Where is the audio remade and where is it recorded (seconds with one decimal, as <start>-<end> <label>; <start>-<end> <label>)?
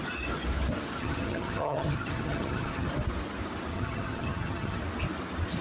0.0-1.0 recorded; 1.0-2.9 remade; 2.9-3.7 recorded; 3.7-4.8 remade; 4.8-5.6 recorded